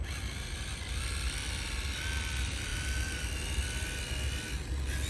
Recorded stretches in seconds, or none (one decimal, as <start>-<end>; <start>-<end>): 0.0-5.1